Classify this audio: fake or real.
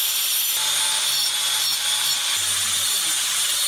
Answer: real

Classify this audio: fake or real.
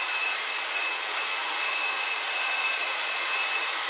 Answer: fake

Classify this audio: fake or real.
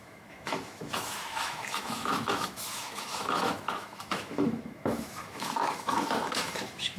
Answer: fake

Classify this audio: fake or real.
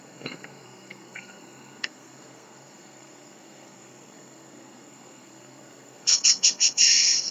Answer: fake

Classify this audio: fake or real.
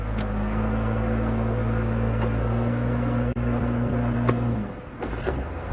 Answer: fake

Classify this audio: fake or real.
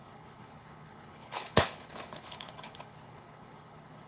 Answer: fake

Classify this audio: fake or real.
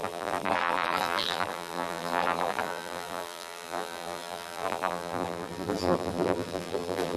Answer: fake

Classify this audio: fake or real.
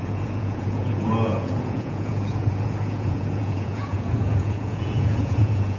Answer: fake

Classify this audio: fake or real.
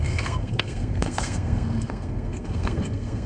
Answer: fake